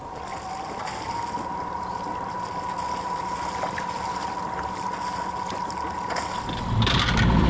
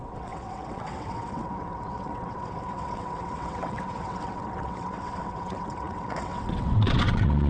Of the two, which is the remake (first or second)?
second